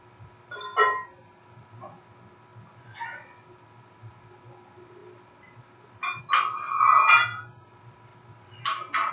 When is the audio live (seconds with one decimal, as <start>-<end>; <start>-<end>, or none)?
0.0-9.1